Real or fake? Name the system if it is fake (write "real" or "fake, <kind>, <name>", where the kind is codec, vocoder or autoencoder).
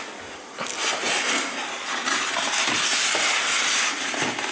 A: real